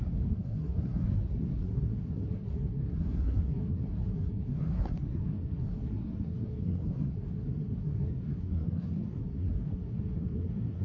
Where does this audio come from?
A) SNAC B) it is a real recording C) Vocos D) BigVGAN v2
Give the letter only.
A